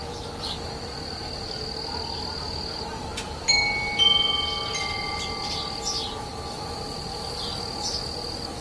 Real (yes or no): yes